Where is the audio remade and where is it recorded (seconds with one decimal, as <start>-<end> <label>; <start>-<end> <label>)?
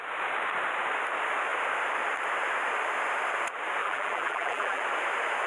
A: 0.0-3.8 recorded; 3.8-4.8 remade; 4.8-5.5 recorded